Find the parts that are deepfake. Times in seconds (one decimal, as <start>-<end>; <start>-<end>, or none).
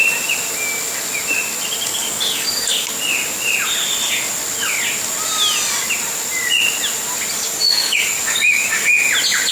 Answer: 1.9-2.9; 7.3-9.1